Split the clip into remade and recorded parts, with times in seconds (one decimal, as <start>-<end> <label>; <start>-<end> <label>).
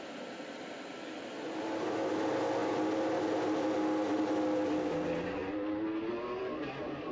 0.0-7.1 recorded